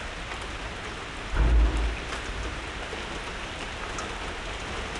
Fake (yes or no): no